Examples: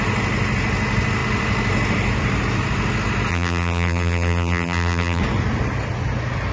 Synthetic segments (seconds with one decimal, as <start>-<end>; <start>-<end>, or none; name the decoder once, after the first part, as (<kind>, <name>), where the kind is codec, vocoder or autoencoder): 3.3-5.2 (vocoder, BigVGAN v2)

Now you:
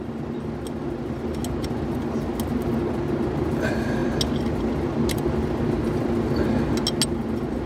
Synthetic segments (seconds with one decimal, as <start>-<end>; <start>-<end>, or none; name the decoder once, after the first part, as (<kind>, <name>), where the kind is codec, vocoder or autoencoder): none

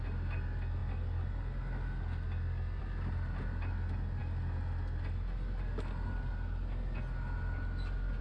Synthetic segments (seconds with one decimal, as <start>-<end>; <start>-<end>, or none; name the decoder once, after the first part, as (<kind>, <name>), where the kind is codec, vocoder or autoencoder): none

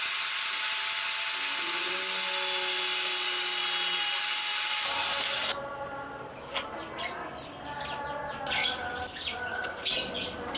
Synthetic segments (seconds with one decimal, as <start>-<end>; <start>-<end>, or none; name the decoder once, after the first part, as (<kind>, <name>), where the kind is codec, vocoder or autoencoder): 4.5-5.6 (vocoder, BigVGAN v2)

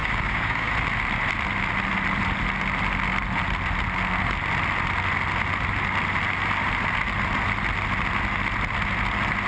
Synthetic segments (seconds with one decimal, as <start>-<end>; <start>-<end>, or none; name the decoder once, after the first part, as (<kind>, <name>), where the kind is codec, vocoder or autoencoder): 0.0-0.7 (codec, DAC)